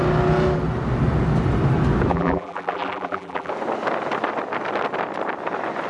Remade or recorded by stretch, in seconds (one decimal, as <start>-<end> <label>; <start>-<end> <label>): 0.0-2.1 recorded; 2.1-3.5 remade; 3.5-5.9 recorded